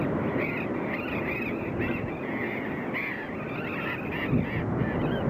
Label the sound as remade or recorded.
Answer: recorded